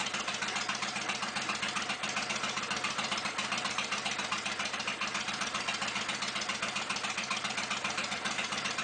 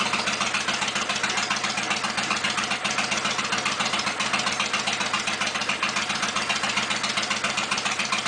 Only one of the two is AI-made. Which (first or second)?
first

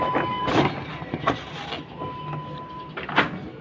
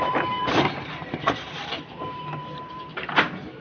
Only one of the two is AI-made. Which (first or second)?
second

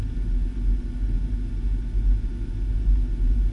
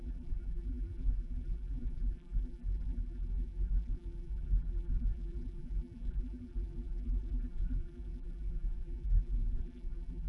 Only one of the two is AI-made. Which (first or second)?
second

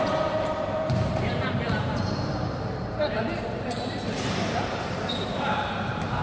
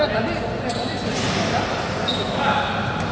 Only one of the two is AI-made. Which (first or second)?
first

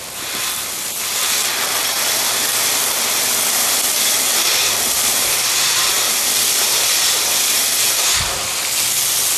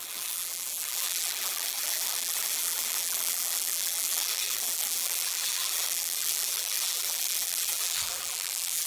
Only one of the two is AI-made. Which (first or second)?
second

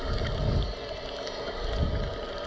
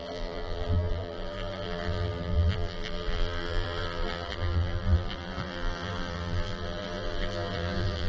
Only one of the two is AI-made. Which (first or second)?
second